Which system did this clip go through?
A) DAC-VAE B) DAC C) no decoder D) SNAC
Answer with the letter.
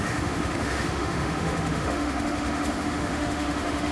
A